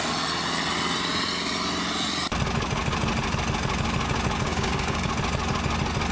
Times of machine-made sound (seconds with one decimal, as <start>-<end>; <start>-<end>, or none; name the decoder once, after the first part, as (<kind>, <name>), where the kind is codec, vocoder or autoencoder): 4.5-5.1 (codec, DAC)